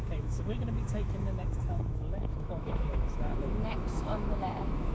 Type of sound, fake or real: fake